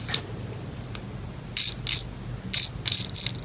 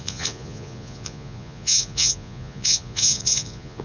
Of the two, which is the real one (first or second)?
first